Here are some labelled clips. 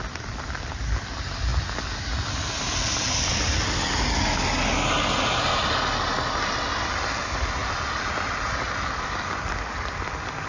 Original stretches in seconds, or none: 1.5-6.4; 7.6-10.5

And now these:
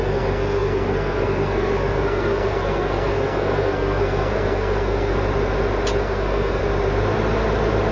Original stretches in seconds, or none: 5.1-6.0; 6.6-7.9